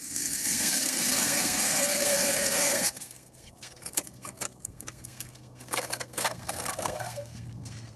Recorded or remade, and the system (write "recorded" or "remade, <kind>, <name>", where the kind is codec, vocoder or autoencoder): remade, codec, SNAC